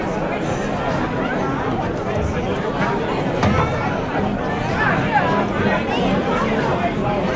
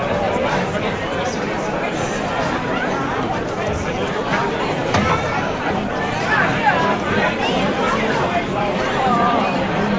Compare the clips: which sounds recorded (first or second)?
first